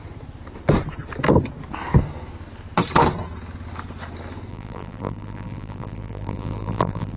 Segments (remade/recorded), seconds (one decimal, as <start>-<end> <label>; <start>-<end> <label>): 0.0-4.5 recorded; 4.5-7.2 remade